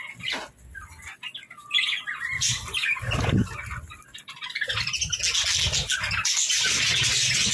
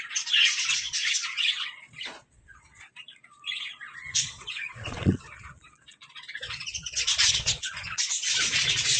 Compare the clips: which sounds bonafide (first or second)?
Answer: first